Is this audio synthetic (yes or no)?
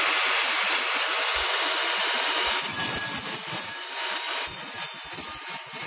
no